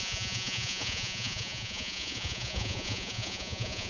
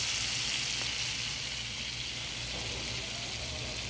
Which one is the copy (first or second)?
first